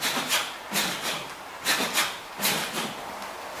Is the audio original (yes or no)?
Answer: no